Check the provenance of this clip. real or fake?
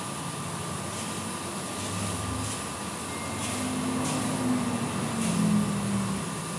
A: real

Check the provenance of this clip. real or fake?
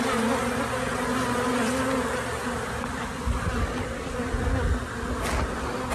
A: real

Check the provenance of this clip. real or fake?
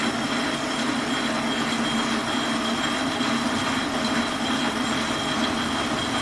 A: real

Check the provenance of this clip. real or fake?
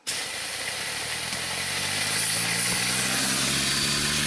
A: real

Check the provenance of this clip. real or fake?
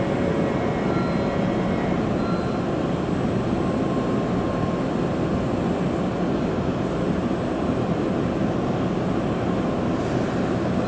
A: real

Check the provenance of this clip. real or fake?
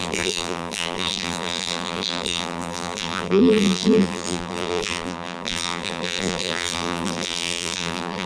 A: fake